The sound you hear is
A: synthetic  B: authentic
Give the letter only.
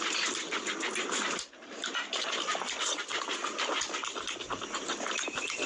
B